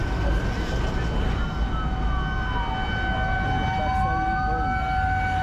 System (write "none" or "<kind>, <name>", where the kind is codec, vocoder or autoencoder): none